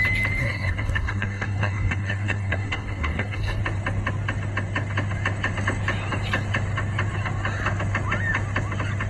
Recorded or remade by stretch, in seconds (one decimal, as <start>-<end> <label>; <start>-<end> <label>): 0.0-0.4 recorded; 0.4-3.6 remade; 3.6-9.1 recorded